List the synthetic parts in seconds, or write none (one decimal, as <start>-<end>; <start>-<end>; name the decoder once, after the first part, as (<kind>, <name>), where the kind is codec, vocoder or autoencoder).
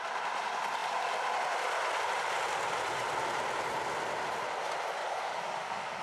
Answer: 5.0-6.0 (codec, DAC)